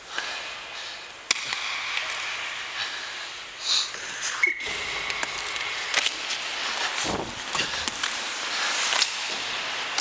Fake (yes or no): no